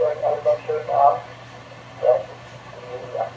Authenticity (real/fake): real